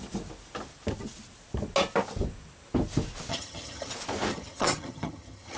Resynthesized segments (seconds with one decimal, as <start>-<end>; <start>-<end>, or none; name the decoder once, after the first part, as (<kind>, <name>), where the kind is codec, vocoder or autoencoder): 3.3-3.9 (vocoder, HiFi-GAN); 4.3-5.6